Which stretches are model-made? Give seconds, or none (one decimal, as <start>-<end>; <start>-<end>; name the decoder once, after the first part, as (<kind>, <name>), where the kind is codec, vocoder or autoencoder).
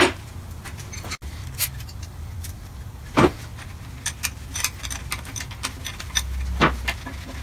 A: none